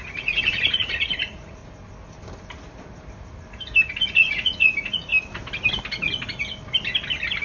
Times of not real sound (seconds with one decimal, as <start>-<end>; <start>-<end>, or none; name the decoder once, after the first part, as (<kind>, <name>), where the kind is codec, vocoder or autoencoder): 0.0-1.6 (vocoder, Vocos); 4.0-5.1